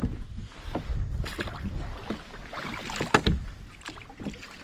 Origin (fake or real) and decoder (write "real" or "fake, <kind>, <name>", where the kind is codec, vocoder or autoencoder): real